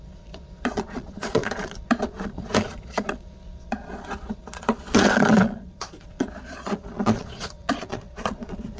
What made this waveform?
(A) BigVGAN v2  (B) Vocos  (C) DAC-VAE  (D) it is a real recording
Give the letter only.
B